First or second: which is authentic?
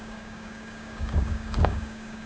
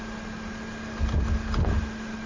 second